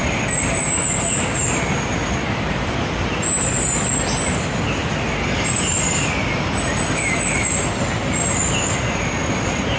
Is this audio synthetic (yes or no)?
no